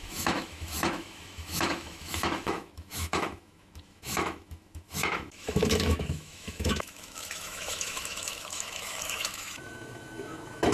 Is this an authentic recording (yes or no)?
no